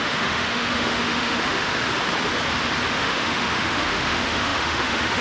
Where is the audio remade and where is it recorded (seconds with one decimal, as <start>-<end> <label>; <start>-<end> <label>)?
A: 0.0-1.8 remade; 1.8-2.9 recorded; 2.9-5.2 remade